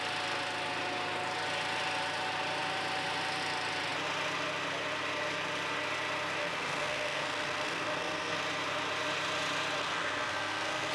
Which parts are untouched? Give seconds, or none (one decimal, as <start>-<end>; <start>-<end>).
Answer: 0.0-6.4; 8.4-9.8